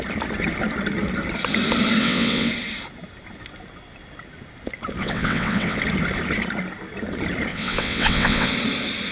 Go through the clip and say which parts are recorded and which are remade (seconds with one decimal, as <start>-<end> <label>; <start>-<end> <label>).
0.0-2.0 recorded; 2.0-2.5 remade; 2.5-5.0 recorded; 5.0-5.8 remade; 5.8-7.5 recorded; 7.5-8.5 remade; 8.5-9.1 recorded